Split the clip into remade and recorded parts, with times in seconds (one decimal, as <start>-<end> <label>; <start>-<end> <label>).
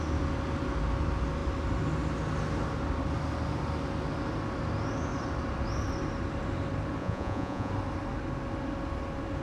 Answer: 0.0-7.0 recorded; 7.0-7.7 remade; 7.7-9.4 recorded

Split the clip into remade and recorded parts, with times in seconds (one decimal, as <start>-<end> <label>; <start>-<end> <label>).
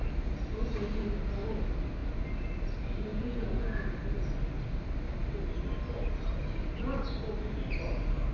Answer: 0.0-3.1 recorded; 3.1-3.8 remade; 3.8-8.3 recorded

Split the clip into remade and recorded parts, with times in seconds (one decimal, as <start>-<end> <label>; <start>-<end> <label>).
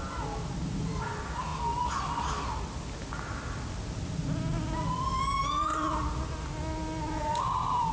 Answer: 0.0-7.9 recorded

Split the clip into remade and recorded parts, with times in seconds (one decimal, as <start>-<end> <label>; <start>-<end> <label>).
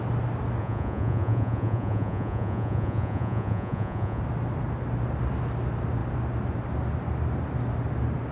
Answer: 0.0-0.6 recorded; 0.6-4.2 remade; 4.2-8.3 recorded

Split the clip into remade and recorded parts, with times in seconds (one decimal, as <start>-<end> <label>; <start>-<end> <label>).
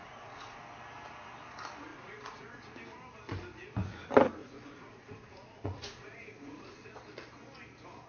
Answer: 0.0-0.6 remade; 0.6-1.9 recorded; 1.9-2.6 remade; 2.6-4.4 recorded; 4.4-6.9 remade; 6.9-8.1 recorded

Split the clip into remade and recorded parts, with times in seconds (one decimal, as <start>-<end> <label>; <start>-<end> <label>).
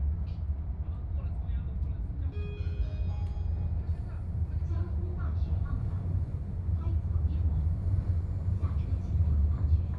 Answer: 0.0-4.6 recorded; 4.6-6.9 remade; 6.9-7.8 recorded; 7.8-8.5 remade; 8.5-10.0 recorded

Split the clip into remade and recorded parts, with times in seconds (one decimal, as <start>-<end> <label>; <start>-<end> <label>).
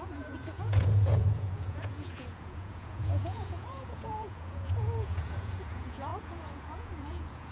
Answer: 0.0-7.5 remade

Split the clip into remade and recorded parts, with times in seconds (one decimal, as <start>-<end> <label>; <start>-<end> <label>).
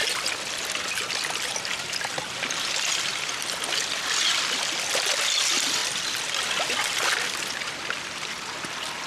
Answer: 0.0-9.1 recorded